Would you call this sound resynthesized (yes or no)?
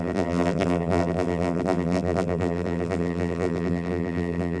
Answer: yes